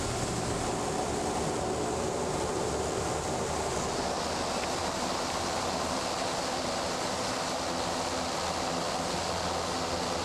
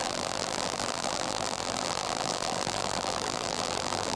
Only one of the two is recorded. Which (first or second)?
first